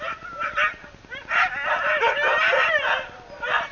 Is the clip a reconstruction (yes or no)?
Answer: no